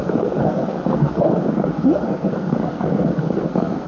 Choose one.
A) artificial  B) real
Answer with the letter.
A